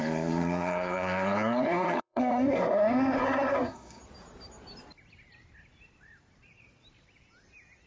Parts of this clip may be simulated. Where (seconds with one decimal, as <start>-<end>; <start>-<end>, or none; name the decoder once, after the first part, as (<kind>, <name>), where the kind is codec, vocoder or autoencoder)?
0.0-4.0 (codec, SNAC)